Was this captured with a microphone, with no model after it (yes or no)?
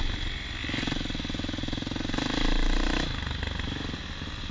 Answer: yes